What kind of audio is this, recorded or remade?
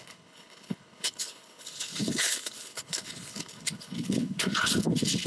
remade